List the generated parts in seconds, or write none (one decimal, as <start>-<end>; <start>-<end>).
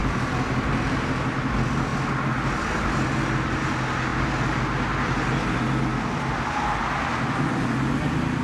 none